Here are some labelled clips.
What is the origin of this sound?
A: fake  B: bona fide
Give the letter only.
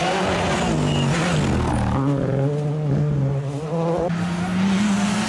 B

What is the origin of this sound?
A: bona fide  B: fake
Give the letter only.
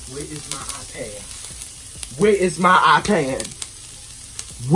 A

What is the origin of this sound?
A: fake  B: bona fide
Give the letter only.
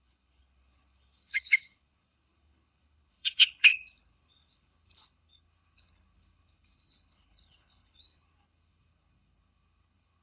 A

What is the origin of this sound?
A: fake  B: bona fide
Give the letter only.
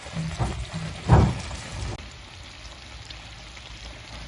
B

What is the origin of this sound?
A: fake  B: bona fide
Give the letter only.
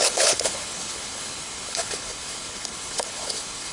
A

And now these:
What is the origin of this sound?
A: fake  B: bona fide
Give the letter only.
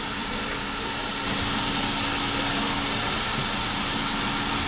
B